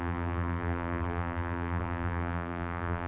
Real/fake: fake